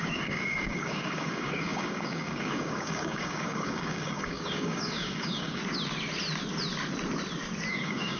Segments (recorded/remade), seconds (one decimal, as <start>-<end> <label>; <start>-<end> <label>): 0.0-5.6 remade; 5.6-7.7 recorded; 7.7-8.2 remade